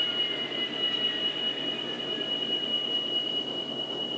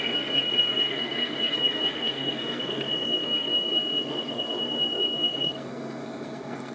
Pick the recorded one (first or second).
first